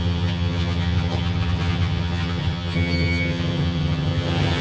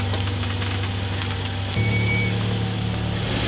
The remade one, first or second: first